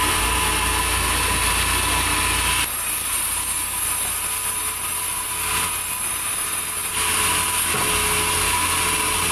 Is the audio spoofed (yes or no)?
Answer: no